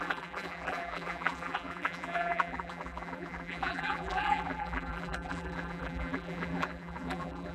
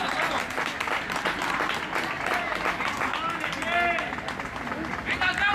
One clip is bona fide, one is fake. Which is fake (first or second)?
first